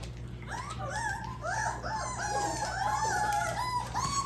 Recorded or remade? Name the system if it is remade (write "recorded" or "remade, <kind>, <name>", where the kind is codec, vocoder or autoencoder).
recorded